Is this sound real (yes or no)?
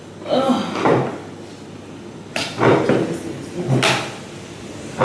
yes